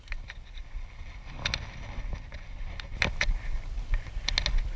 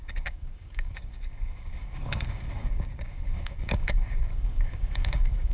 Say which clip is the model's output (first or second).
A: second